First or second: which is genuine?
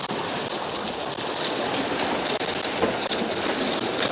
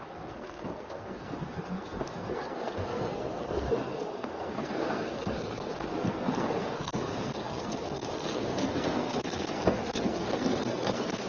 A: first